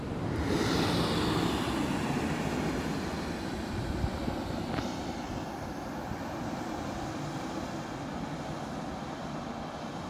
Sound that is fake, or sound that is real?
real